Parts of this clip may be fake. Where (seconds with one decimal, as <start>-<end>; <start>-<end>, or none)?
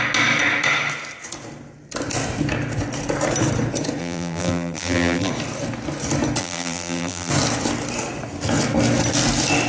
4.0-5.3; 6.4-7.3